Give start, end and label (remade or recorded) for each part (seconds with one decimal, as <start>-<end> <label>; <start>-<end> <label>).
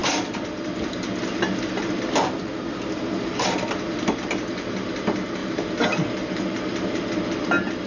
0.0-5.4 recorded; 5.4-7.1 remade; 7.1-7.9 recorded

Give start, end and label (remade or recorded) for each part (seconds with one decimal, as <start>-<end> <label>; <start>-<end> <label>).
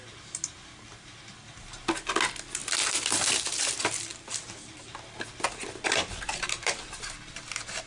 0.0-4.1 recorded; 4.1-4.8 remade; 4.8-7.9 recorded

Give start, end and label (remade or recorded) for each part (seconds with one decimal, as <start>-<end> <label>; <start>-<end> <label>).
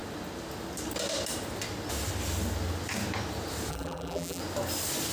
0.0-3.7 recorded; 3.7-4.4 remade; 4.4-5.1 recorded